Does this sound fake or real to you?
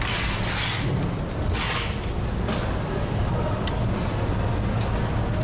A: real